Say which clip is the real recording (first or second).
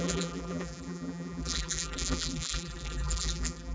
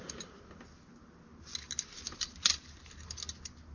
second